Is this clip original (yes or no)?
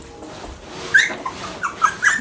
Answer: yes